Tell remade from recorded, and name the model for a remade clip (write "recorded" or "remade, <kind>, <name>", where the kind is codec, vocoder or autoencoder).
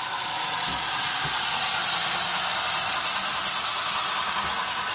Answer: recorded